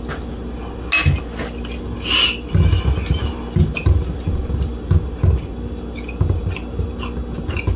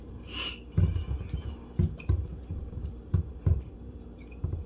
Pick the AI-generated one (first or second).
second